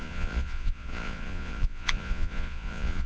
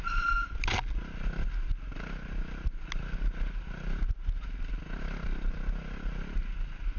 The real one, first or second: second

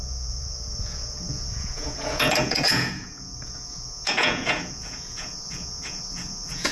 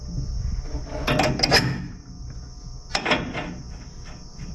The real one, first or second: second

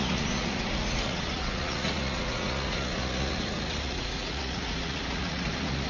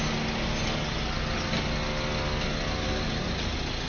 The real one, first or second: second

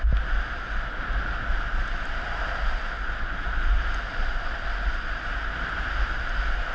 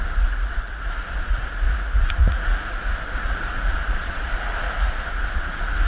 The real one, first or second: first